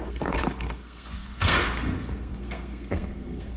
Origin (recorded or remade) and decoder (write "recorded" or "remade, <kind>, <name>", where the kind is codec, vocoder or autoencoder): remade, codec, SNAC